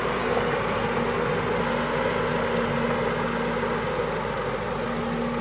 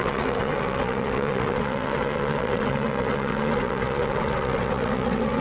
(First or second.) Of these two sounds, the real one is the first